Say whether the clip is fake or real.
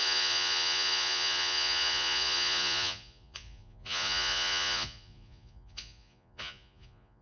fake